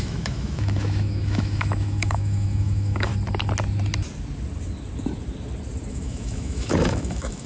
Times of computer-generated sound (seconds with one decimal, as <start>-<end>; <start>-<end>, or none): 0.0-3.1; 5.9-7.5